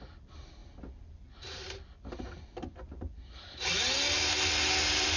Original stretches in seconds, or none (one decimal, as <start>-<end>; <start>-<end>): 0.0-5.2